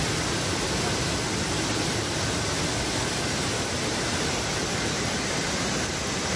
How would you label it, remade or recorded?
recorded